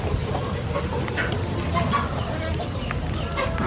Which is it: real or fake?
real